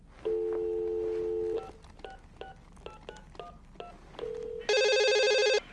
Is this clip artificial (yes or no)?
no